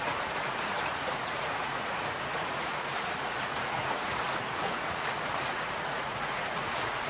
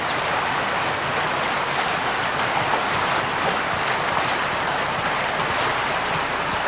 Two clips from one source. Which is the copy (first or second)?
first